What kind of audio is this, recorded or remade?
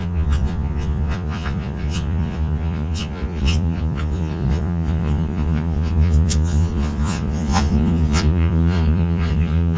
remade